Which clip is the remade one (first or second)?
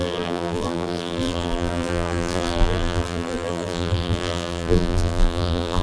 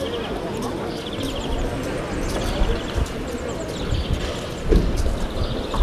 first